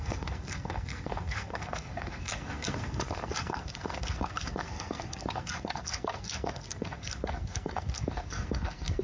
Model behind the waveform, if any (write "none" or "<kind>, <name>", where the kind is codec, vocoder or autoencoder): codec, SNAC